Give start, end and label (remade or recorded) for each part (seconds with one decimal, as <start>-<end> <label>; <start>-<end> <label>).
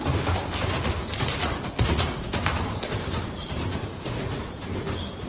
0.0-1.0 recorded; 1.0-2.3 remade; 2.3-3.4 recorded; 3.4-4.6 remade; 4.6-5.3 recorded